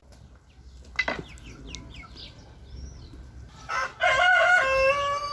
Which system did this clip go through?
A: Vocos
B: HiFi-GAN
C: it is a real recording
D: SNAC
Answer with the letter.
C